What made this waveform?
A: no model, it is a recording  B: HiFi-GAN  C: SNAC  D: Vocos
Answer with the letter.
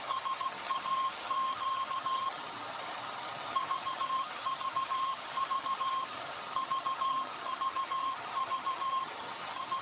B